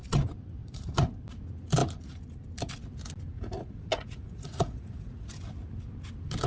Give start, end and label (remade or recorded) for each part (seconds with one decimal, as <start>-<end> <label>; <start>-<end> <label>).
0.0-0.6 recorded; 0.6-1.1 remade; 1.1-3.3 recorded; 3.3-5.3 remade; 5.3-6.5 recorded